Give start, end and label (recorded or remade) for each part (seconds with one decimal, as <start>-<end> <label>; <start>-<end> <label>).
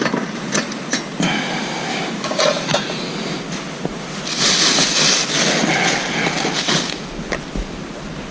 0.0-1.9 recorded; 1.9-2.4 remade; 2.4-8.3 recorded